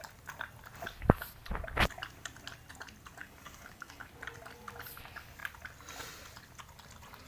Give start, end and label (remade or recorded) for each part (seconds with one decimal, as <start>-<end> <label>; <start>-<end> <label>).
0.0-3.2 recorded; 3.2-4.1 remade; 4.1-7.3 recorded